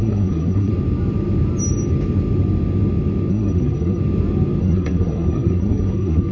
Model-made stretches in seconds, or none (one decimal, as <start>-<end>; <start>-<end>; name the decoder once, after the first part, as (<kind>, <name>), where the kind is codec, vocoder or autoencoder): 0.0-0.7 (codec, SNAC); 3.3-4.0; 4.6-6.3